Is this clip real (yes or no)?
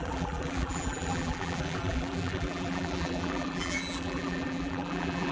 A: no